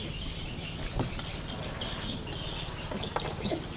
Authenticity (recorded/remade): recorded